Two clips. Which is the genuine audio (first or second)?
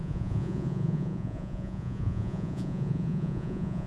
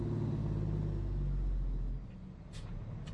second